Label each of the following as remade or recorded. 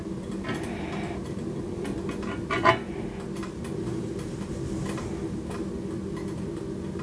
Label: recorded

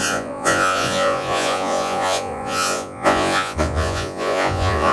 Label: remade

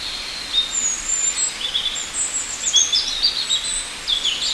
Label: recorded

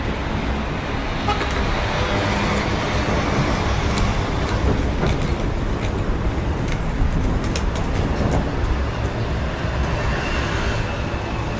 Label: recorded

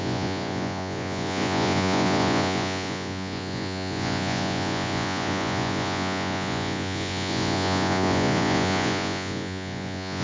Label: remade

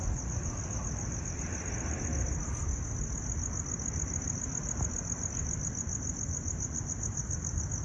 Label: recorded